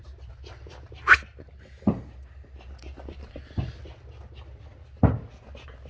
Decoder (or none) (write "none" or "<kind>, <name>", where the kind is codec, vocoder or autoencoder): none